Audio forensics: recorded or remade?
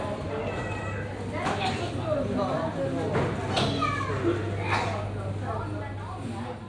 recorded